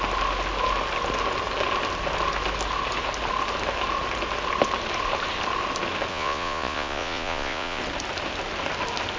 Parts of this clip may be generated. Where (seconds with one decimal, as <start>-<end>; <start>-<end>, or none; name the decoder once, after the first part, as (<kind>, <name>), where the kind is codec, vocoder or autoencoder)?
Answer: 6.1-7.8 (vocoder, Vocos)